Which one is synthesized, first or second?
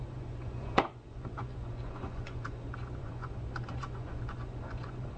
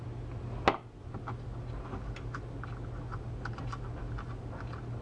first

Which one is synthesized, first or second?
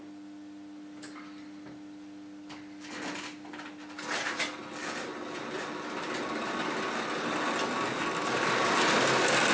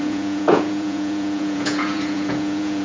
second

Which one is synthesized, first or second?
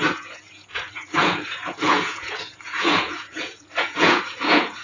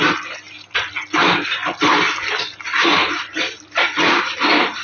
first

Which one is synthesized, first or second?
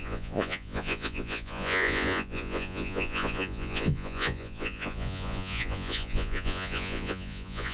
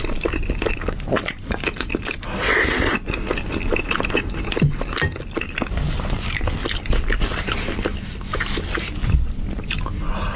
first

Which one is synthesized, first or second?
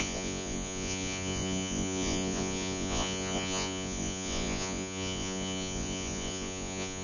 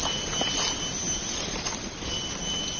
first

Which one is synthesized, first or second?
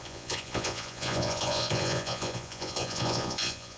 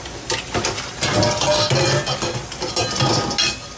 first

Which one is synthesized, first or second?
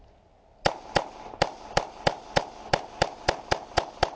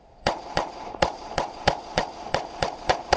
second